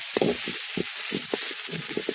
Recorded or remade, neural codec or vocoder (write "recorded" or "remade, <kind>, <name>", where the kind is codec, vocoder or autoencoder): recorded